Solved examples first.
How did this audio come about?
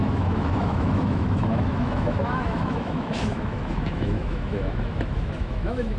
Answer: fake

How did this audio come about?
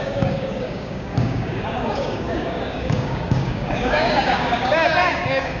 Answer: fake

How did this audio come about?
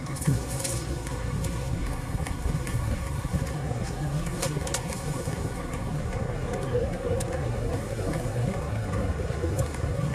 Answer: fake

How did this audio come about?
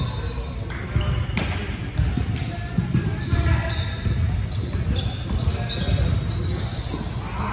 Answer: real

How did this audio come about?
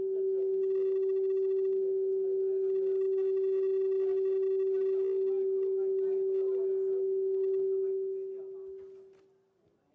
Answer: real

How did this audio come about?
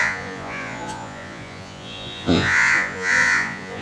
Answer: fake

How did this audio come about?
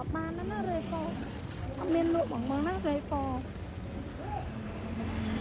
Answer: real